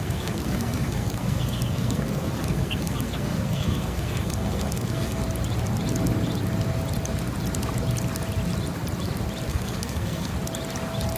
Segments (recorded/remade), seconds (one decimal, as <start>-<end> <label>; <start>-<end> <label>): 0.0-5.2 remade; 5.2-9.5 recorded; 9.5-10.3 remade; 10.3-11.2 recorded